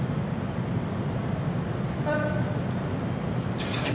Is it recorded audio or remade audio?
recorded